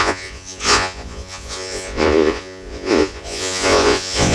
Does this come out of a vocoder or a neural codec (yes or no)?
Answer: yes